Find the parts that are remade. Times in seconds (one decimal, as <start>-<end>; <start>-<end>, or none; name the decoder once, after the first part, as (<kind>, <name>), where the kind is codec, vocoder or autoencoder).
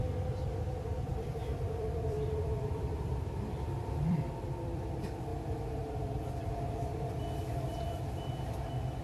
1.1-3.1 (vocoder, BigVGAN v2); 3.5-4.3